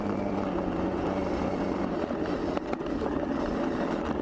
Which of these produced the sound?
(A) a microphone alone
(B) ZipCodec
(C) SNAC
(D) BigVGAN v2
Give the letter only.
D